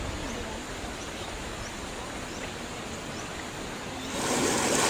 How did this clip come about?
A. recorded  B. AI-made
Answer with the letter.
A